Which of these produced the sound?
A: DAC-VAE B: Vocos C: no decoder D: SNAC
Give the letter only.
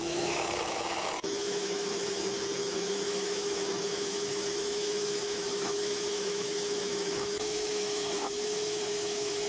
A